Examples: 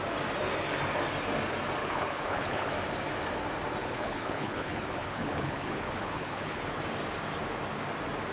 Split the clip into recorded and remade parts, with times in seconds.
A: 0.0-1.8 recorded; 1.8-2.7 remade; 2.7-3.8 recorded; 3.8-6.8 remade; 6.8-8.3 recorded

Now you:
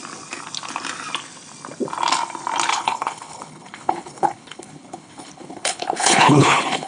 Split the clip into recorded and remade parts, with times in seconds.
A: 0.0-2.7 recorded; 2.7-6.9 remade